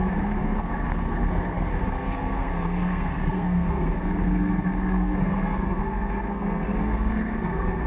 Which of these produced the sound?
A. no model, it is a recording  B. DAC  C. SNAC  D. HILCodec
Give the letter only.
C